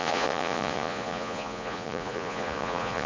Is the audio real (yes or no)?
no